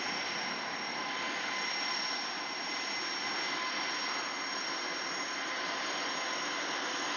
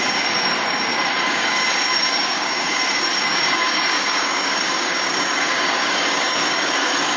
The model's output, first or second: second